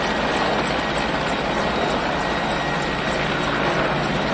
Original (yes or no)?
yes